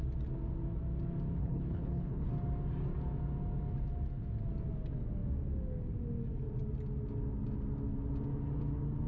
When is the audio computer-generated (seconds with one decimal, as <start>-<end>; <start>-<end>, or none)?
1.4-2.3

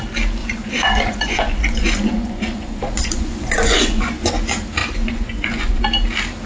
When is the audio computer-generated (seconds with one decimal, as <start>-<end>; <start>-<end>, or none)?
0.4-4.3; 4.8-5.8

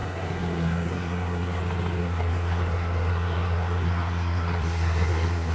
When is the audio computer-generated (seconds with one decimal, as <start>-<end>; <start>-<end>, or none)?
0.0-1.6; 2.0-5.5

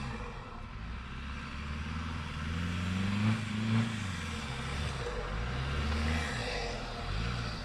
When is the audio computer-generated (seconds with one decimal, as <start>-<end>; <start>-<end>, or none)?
none

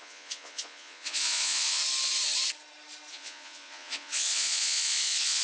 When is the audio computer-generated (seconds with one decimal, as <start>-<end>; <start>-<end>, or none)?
0.0-1.8; 3.1-5.4

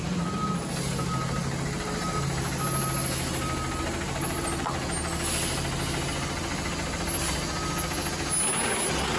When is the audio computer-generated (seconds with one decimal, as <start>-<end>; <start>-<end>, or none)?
none

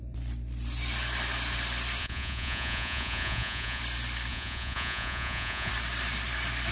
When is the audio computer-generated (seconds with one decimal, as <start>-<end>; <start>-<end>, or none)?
2.0-3.8; 4.3-5.7

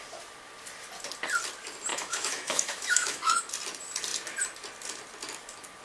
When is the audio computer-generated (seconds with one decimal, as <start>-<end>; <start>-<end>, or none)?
1.9-3.4